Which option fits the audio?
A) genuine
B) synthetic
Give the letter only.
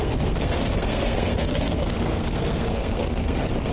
B